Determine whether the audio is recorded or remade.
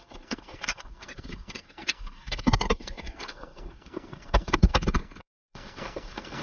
remade